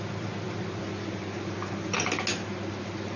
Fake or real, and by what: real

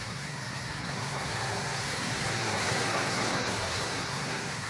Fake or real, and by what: fake, codec, SNAC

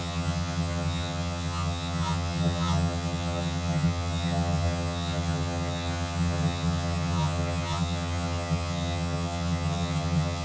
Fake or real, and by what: fake, vocoder, HiFi-GAN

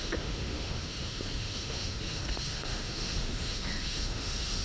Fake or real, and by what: fake, autoencoder, DAC-VAE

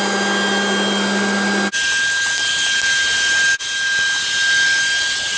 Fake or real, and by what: real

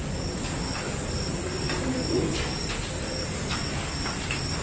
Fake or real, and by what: real